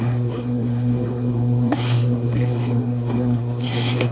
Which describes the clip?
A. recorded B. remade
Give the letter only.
B